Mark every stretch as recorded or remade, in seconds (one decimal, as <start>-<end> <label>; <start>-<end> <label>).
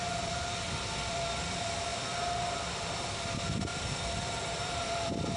0.0-1.9 remade; 1.9-2.7 recorded; 2.7-5.4 remade